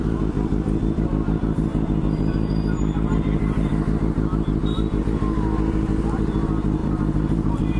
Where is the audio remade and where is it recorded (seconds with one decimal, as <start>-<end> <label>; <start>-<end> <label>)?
0.0-6.8 recorded; 6.8-7.8 remade